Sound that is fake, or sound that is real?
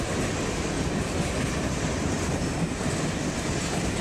real